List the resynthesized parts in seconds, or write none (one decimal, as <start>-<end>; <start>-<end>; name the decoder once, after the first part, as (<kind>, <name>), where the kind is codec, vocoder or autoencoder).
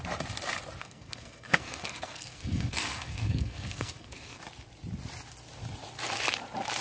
0.8-4.4 (codec, SNAC)